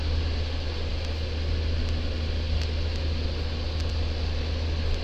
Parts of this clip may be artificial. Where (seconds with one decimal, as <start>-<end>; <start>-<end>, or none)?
none